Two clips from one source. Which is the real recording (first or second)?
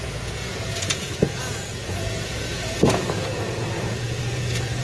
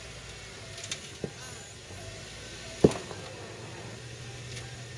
second